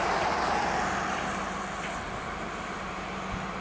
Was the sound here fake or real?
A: real